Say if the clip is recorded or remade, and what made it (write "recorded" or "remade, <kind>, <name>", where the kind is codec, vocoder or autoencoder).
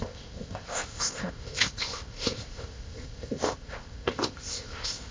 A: remade, codec, ZipCodec